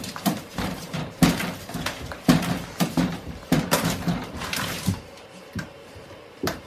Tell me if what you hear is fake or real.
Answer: fake